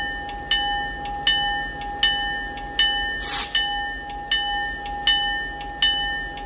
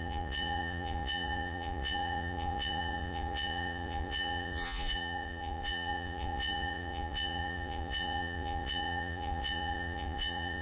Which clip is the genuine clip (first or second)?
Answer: first